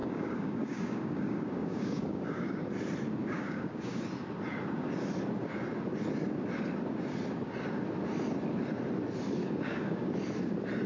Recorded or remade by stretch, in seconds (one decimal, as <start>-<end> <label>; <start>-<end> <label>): 0.0-2.7 remade; 2.7-3.2 recorded; 3.2-4.0 remade; 4.0-9.4 recorded; 9.4-10.1 remade; 10.1-10.9 recorded